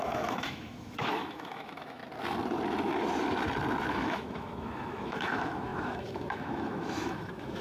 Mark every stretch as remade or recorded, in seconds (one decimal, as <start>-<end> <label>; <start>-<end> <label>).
0.0-2.0 remade; 2.0-3.9 recorded; 3.9-7.6 remade